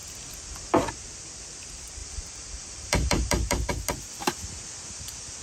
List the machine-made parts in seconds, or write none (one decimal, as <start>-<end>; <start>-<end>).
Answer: 2.0-3.7